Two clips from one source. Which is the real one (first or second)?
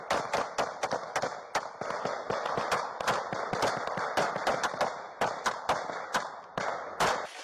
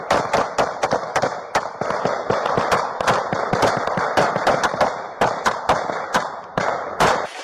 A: first